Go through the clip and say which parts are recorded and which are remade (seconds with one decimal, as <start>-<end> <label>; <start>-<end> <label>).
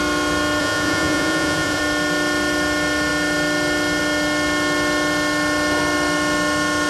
0.0-0.6 recorded; 0.6-1.8 remade; 1.8-6.9 recorded